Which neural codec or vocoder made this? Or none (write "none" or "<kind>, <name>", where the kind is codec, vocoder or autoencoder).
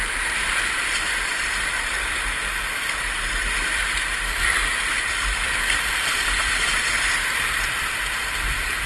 vocoder, BigVGAN v2